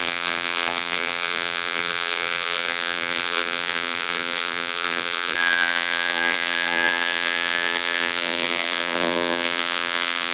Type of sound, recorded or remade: remade